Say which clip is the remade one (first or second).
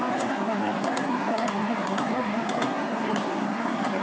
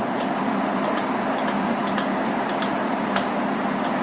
first